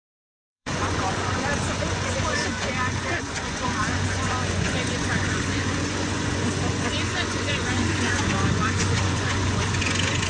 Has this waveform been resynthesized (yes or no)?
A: yes